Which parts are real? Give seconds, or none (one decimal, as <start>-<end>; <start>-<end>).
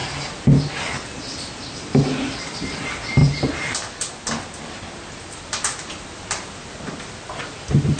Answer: 0.0-8.0